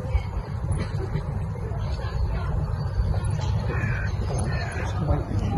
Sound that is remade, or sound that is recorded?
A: remade